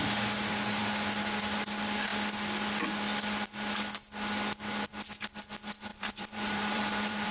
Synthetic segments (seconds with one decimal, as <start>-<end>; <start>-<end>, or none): 5.9-7.3